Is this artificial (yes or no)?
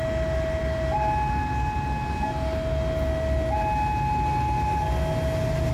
no